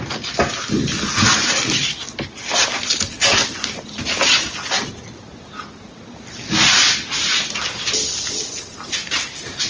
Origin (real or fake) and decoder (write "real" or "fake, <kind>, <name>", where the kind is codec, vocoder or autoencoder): real